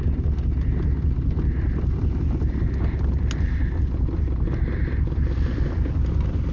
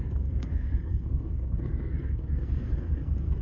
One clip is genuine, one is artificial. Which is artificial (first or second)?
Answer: second